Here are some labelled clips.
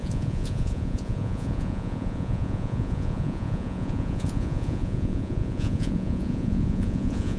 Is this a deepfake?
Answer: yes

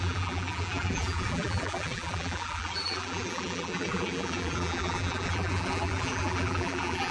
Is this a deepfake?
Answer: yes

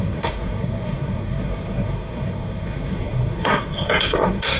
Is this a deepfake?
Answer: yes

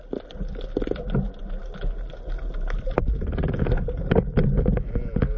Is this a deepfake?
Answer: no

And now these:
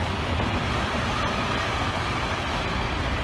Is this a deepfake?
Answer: no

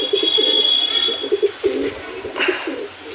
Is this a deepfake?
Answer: no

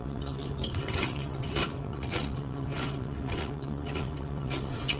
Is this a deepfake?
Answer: yes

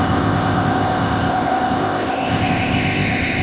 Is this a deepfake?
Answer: yes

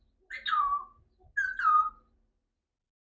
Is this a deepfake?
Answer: no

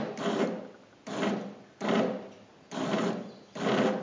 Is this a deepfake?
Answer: no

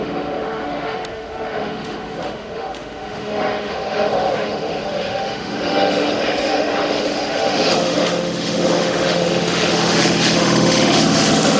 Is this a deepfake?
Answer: yes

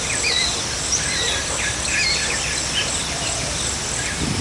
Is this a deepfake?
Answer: no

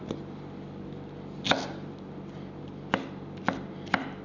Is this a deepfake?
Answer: no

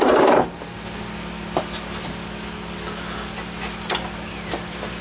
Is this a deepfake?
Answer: no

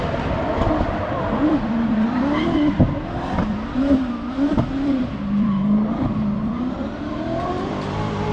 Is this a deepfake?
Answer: yes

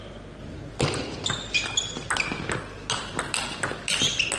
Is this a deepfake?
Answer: no